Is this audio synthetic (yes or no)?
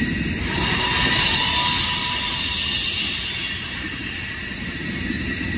no